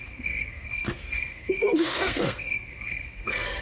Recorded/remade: remade